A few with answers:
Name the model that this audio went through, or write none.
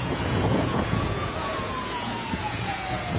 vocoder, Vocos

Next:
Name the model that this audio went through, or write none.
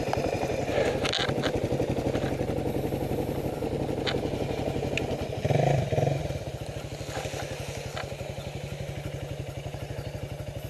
none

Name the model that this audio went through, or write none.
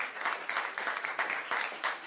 none